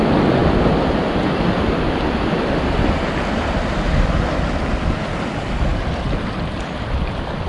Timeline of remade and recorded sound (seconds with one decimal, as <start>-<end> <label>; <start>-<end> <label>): 0.0-7.5 recorded